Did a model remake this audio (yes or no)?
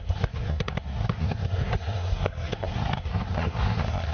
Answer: yes